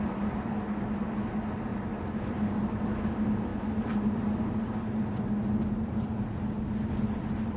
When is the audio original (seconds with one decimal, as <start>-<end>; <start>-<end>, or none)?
0.0-7.6